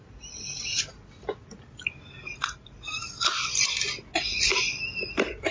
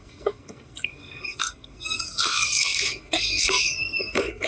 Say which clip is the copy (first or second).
second